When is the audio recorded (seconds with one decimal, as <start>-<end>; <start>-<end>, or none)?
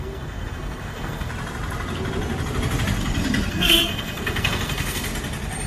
1.3-3.5; 5.1-5.7